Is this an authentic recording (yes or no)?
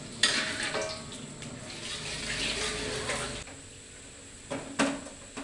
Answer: yes